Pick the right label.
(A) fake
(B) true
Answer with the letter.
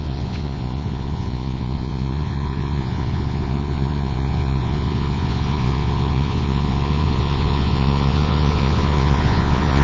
A